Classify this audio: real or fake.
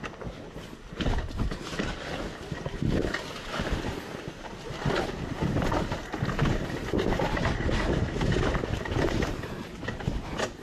real